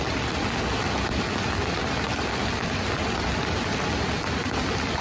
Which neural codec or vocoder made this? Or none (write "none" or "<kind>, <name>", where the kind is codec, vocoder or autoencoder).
none